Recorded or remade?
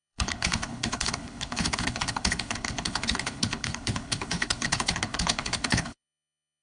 remade